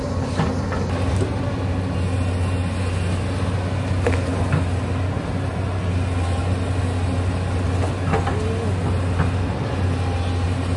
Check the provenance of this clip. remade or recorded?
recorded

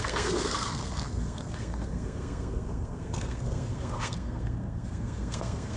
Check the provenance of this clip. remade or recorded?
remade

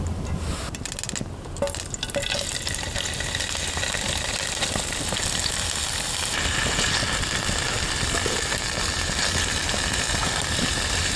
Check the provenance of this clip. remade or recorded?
recorded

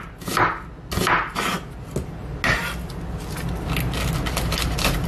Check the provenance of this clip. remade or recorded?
recorded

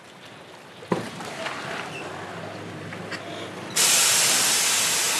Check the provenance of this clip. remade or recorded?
recorded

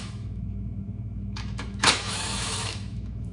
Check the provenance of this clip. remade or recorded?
remade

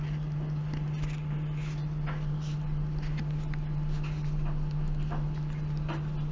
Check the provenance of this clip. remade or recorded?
recorded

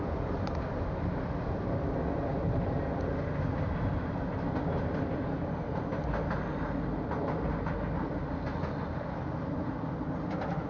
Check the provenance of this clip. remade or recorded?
recorded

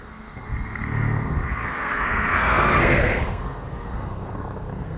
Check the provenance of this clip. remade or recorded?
remade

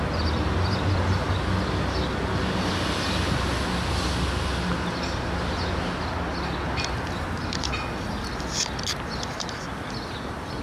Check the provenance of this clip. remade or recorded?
recorded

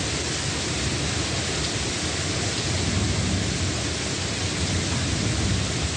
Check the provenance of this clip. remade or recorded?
recorded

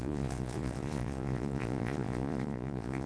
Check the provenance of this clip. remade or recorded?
remade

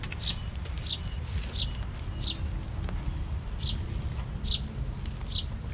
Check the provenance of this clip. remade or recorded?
recorded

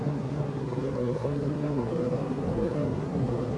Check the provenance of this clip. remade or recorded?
remade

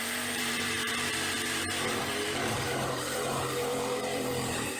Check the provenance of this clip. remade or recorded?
remade